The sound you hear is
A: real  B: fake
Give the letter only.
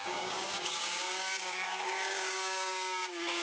B